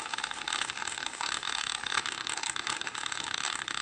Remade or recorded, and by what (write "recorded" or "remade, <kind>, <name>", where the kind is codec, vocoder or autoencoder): remade, autoencoder, DAC-VAE